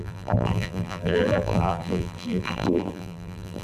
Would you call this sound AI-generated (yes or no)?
yes